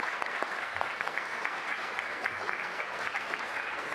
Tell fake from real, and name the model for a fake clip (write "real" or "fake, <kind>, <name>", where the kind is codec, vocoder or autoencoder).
fake, codec, SNAC